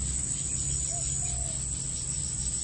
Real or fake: real